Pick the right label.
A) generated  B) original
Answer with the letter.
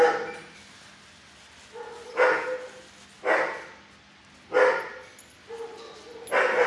B